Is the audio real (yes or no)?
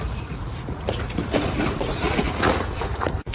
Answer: no